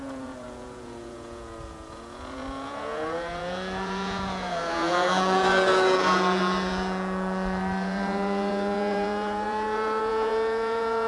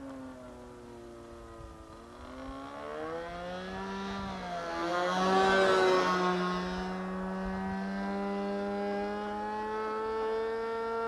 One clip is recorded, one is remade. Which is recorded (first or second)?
second